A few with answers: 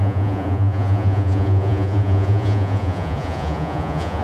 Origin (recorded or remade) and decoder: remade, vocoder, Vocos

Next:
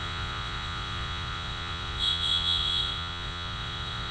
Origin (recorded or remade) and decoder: remade, vocoder, Vocos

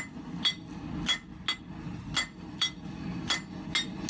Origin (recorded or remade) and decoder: recorded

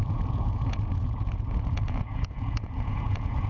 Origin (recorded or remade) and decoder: remade, vocoder, Vocos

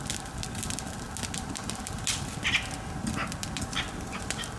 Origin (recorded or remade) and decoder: recorded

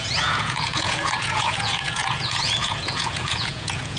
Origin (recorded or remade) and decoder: remade, vocoder, Vocos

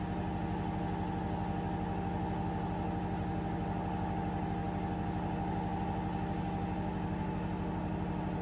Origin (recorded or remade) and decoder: recorded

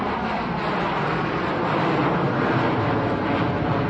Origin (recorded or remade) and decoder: recorded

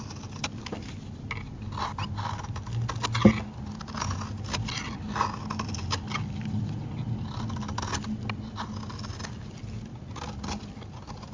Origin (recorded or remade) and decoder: recorded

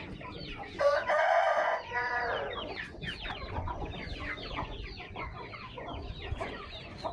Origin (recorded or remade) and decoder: remade, vocoder, Vocos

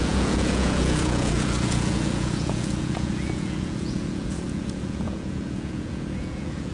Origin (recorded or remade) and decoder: remade, vocoder, Vocos